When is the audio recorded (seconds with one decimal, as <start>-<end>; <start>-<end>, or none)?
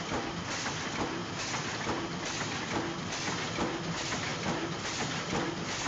0.0-4.3; 5.5-5.9